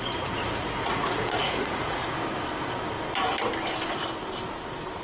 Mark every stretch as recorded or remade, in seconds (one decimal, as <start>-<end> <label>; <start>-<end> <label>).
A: 0.0-2.0 remade; 2.0-5.0 recorded